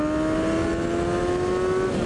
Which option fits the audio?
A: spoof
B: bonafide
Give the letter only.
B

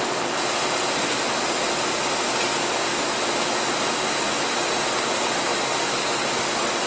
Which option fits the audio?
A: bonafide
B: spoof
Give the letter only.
A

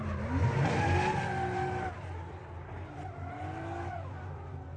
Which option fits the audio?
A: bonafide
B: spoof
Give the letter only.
A